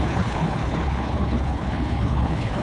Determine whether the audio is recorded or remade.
remade